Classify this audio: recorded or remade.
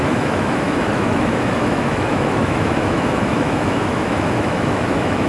remade